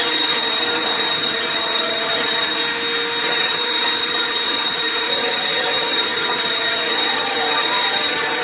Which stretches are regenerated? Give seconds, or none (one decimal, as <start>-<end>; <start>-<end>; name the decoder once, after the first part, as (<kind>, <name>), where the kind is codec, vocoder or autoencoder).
0.0-2.6 (vocoder, HiFi-GAN); 3.2-8.4